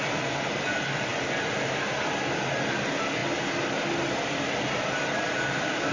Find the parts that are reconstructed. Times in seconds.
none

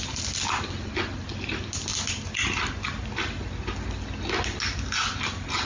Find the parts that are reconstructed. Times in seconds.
none

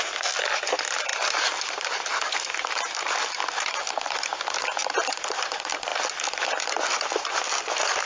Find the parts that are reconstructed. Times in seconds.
0.0-8.1 (vocoder, BigVGAN v2)